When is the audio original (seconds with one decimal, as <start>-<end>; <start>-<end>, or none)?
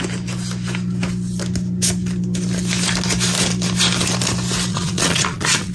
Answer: 0.0-4.7